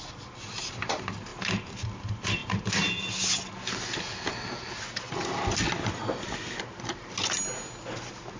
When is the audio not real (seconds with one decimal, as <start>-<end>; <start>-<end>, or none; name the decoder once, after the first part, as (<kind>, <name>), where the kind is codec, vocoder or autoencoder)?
none